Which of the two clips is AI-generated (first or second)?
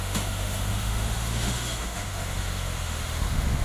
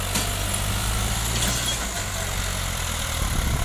first